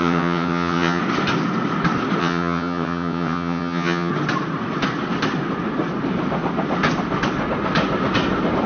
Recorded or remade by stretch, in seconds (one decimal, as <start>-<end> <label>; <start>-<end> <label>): 0.0-1.0 remade; 1.0-2.2 recorded; 2.2-4.1 remade; 4.1-8.7 recorded